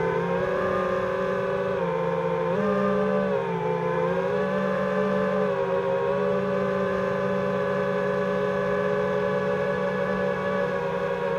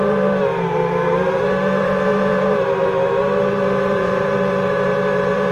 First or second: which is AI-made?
second